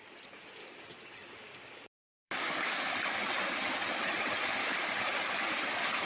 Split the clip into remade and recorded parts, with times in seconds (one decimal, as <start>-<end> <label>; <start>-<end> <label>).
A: 0.0-0.6 recorded; 0.6-2.9 remade; 2.9-4.6 recorded; 4.6-5.2 remade; 5.2-6.1 recorded